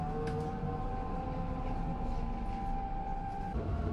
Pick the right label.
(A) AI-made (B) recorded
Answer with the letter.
B